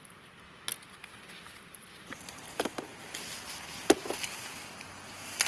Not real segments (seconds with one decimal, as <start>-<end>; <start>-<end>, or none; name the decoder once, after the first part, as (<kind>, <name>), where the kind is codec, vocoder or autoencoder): none